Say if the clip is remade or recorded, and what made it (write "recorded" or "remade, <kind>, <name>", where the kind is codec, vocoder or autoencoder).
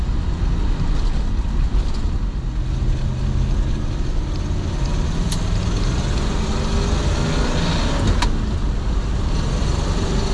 recorded